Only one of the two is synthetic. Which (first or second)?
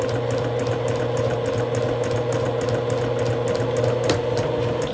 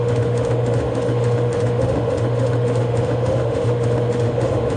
second